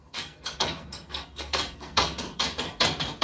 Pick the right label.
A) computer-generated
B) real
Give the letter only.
A